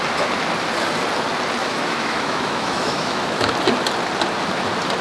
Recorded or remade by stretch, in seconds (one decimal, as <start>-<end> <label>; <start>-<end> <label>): 0.0-1.6 recorded; 1.6-3.5 remade; 3.5-5.0 recorded